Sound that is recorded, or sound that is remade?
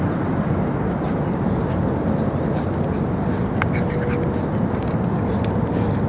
recorded